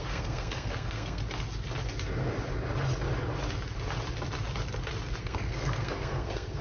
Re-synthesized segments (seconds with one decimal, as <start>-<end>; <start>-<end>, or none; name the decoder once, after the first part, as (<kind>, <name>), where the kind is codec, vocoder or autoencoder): 0.0-1.2 (codec, SNAC); 5.2-6.6